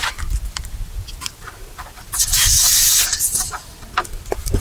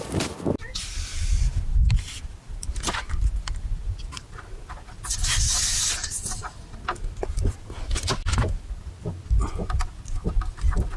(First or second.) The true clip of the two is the second